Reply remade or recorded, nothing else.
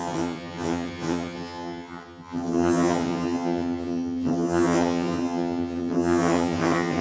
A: remade